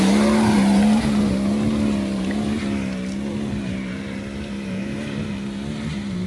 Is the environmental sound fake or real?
real